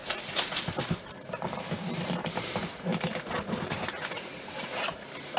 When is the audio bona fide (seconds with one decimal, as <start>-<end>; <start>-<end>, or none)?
0.0-0.9